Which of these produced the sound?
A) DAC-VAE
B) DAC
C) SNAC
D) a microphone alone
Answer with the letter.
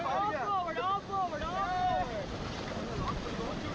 D